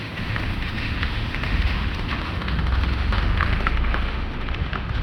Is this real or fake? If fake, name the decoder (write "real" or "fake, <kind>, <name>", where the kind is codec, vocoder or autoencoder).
fake, autoencoder, DAC-VAE